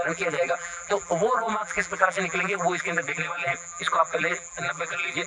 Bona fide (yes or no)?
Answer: no